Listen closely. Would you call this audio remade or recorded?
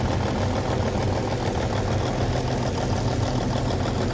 recorded